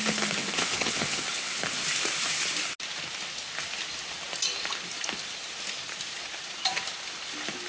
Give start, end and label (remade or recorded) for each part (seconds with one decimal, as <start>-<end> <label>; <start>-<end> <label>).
0.0-0.4 recorded; 0.4-1.6 remade; 1.6-7.7 recorded